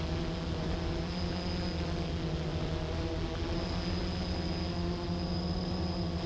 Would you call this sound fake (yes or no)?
no